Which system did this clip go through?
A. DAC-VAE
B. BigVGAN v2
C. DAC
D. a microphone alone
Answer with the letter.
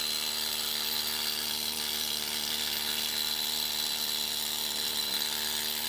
D